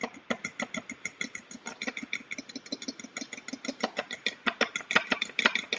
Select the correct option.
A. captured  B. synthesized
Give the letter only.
A